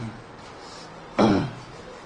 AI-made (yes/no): no